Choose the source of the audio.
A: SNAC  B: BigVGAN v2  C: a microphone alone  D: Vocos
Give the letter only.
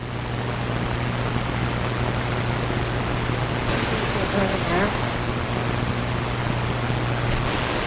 C